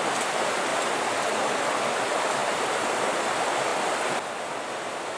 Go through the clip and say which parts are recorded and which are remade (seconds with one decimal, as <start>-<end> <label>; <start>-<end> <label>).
0.0-0.7 recorded; 0.7-1.6 remade; 1.6-2.4 recorded; 2.4-3.0 remade; 3.0-5.2 recorded